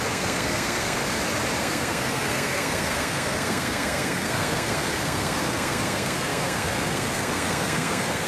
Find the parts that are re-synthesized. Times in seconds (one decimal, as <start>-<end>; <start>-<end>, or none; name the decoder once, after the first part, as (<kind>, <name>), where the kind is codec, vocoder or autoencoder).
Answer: 0.0-1.0 (codec, SNAC); 1.6-8.3